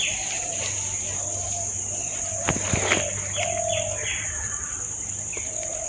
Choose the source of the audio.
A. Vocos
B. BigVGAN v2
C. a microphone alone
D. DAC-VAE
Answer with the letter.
C